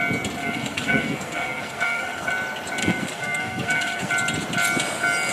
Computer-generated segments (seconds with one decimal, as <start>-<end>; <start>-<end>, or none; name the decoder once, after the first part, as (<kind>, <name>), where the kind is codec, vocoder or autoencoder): 0.4-2.3 (codec, SNAC); 2.8-4.1